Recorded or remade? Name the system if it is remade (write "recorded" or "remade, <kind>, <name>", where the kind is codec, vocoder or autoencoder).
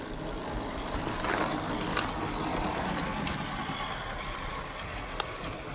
recorded